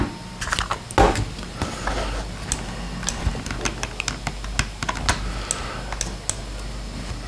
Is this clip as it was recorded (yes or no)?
yes